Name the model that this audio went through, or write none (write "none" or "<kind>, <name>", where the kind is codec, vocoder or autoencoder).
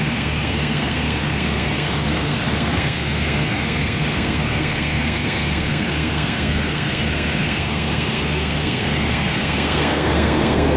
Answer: codec, SNAC